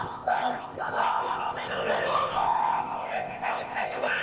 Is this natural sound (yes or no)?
no